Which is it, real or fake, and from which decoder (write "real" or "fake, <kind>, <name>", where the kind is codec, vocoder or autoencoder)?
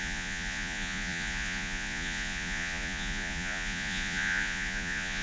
fake, vocoder, Vocos